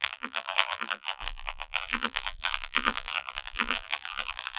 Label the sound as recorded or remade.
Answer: remade